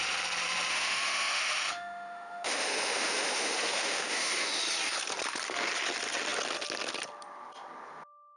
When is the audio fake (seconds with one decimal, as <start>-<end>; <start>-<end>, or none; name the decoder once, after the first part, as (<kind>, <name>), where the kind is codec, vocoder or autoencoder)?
0.7-4.6 (autoencoder, DAC-VAE)